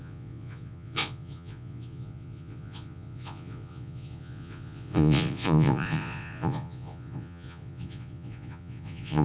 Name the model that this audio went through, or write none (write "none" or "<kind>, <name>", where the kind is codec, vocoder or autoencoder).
vocoder, Vocos